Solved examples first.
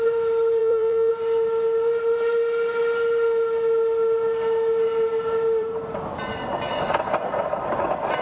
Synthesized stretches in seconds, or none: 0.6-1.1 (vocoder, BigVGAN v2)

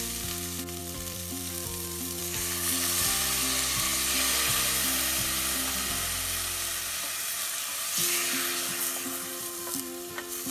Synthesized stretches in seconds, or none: 0.8-2.2 (vocoder, BigVGAN v2); 9.3-10.1

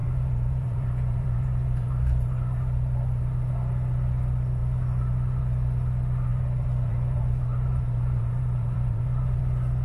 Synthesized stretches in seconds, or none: 0.0-3.5 (vocoder, BigVGAN v2); 6.3-9.4

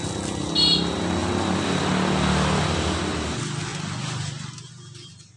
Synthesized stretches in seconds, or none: none

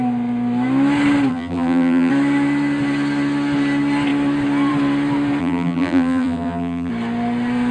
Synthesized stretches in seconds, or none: 1.3-2.1 (vocoder, BigVGAN v2); 5.4-6.9

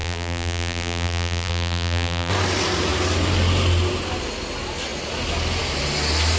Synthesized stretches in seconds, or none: 0.0-2.3 (vocoder, BigVGAN v2)

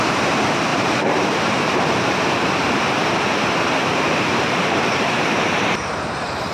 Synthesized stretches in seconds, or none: 0.0-6.5 (vocoder, BigVGAN v2)